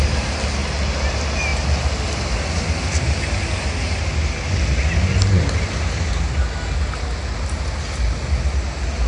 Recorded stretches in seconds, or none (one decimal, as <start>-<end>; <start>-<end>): 0.0-9.1